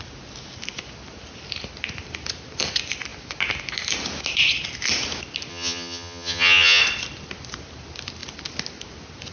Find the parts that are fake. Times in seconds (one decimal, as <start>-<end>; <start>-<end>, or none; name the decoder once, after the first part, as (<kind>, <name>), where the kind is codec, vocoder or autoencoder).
5.5-6.8 (vocoder, HiFi-GAN)